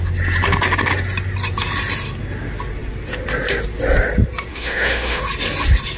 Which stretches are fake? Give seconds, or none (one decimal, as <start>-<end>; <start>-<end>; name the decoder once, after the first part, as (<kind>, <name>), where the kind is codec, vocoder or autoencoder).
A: 4.5-5.2 (autoencoder, DAC-VAE)